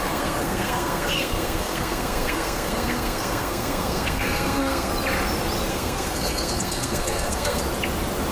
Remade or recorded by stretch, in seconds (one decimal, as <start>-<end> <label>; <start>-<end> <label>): 0.0-4.9 remade; 4.9-5.7 recorded; 5.7-7.6 remade; 7.6-8.3 recorded